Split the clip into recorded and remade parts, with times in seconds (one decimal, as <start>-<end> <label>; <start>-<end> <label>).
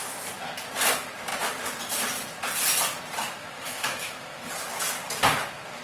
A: 0.0-3.4 recorded; 3.4-4.5 remade; 4.5-5.8 recorded